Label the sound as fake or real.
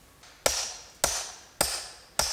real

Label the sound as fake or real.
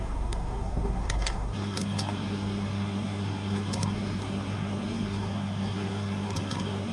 fake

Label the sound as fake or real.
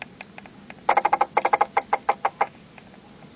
real